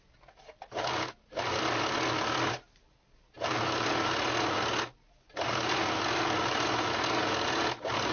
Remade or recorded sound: recorded